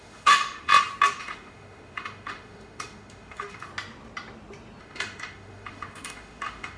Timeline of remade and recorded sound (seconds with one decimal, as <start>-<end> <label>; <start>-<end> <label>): 0.0-0.7 remade; 0.7-1.2 recorded; 1.2-3.7 remade; 3.7-4.8 recorded; 4.8-6.8 remade